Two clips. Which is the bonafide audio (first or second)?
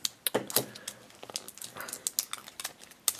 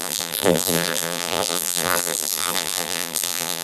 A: first